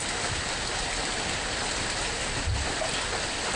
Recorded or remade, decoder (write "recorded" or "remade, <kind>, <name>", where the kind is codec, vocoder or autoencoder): recorded